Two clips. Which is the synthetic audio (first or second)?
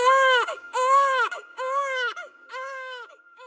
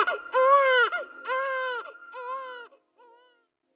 first